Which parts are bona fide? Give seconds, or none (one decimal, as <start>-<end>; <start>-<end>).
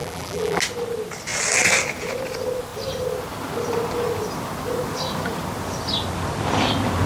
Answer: 0.6-7.1